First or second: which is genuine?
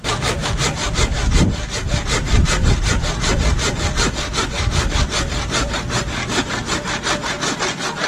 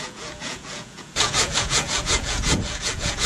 first